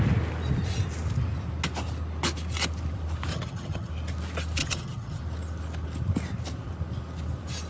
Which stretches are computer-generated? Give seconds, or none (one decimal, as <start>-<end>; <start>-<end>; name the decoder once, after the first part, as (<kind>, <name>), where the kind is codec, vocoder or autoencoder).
3.3-3.9 (vocoder, HiFi-GAN); 4.6-5.2